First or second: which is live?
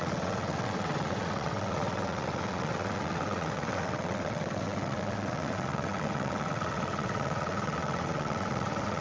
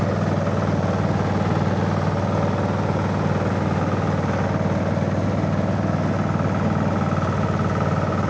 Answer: second